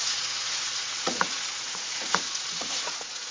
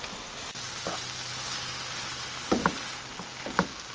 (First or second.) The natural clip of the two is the second